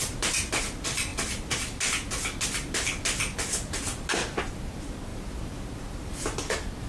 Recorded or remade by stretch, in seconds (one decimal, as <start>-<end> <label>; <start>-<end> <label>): 0.0-6.9 recorded